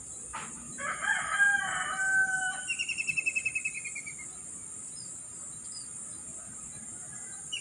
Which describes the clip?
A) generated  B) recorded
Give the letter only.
B